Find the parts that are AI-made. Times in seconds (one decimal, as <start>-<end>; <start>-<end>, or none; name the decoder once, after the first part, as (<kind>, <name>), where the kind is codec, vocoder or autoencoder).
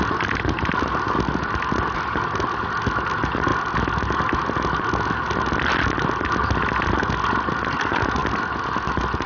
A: none